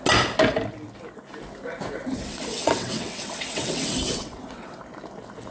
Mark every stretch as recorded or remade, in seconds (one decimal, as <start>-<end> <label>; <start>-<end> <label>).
0.0-2.3 recorded; 2.3-4.8 remade; 4.8-5.5 recorded